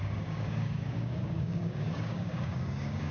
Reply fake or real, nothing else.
fake